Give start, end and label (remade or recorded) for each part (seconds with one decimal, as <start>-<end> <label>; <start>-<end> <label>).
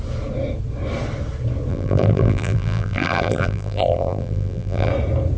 0.0-1.7 recorded; 1.7-4.9 remade; 4.9-5.4 recorded